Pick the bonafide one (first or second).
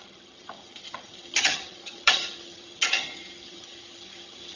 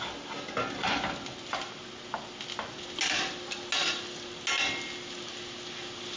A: second